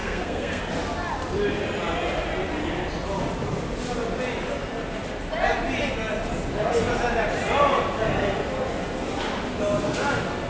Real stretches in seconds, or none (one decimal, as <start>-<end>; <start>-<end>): 0.6-10.5